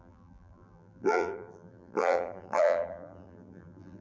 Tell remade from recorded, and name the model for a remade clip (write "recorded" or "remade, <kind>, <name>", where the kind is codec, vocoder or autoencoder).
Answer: remade, vocoder, BigVGAN v2